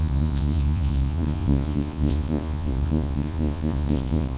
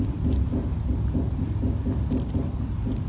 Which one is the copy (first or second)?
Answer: first